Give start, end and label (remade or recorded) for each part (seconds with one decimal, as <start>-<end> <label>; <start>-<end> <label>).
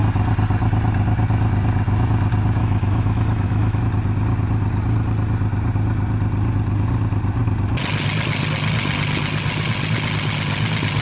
0.0-2.6 recorded; 2.6-3.8 remade; 3.8-11.0 recorded